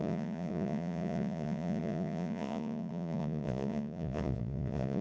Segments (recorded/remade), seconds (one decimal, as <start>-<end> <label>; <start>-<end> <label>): 0.0-5.0 remade